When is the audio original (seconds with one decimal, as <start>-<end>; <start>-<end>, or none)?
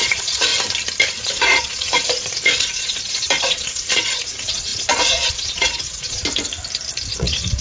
0.5-1.2; 6.2-7.1